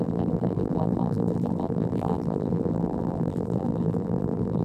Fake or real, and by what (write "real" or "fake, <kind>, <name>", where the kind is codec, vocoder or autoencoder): fake, vocoder, BigVGAN v2